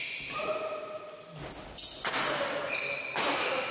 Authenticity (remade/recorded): recorded